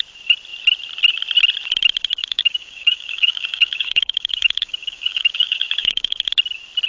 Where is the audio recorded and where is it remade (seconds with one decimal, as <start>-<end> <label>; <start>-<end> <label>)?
0.0-2.2 recorded; 2.2-6.3 remade; 6.3-6.9 recorded